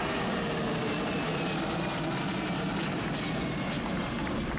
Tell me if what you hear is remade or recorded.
recorded